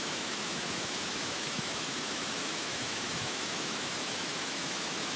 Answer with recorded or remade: remade